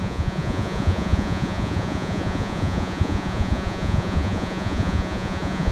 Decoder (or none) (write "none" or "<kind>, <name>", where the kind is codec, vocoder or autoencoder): vocoder, Vocos